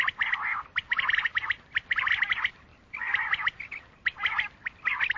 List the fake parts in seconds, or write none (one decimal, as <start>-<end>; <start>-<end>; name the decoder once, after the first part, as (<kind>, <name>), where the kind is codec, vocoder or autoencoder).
none